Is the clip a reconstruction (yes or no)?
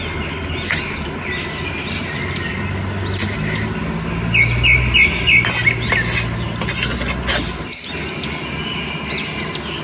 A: no